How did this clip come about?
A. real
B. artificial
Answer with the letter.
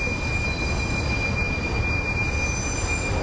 A